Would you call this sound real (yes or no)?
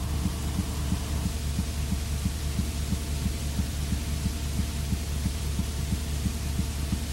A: yes